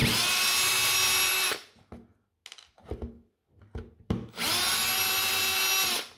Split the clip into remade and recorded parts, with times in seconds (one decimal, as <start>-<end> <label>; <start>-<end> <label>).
0.0-6.2 recorded